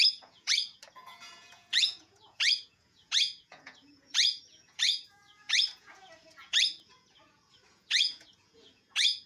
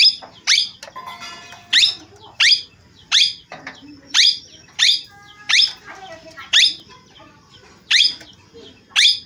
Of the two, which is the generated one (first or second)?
first